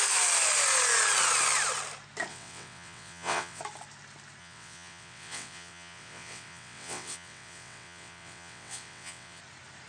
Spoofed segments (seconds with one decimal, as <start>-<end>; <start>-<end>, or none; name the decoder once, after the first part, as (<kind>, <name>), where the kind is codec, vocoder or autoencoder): 2.3-3.6 (vocoder, WaveNeXt); 4.4-9.4